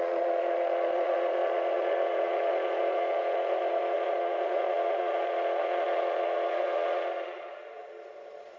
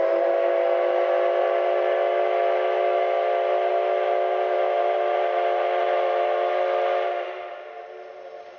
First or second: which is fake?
first